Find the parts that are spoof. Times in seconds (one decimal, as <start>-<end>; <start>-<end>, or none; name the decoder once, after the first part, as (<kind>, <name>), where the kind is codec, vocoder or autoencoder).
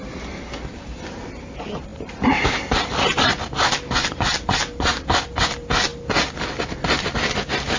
none